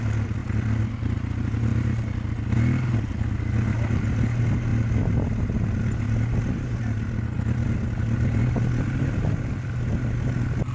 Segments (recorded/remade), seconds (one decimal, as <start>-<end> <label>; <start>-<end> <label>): 0.0-10.7 recorded